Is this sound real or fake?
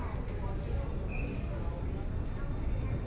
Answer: real